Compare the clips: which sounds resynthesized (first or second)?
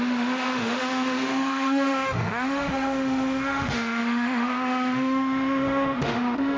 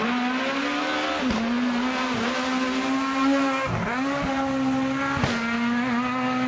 first